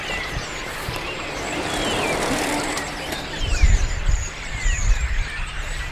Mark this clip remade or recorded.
remade